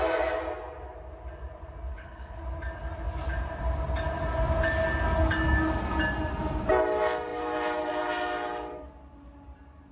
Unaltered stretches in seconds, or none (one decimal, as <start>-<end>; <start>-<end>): 0.0-1.9; 2.4-9.9